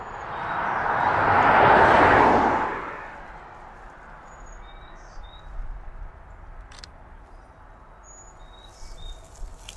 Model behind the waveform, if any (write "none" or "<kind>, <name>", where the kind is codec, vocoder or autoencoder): none